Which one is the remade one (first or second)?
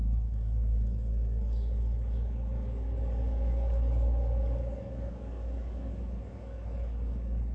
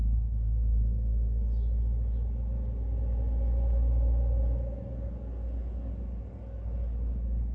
first